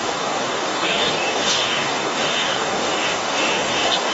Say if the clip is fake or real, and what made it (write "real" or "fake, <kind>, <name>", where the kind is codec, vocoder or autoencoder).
fake, codec, DAC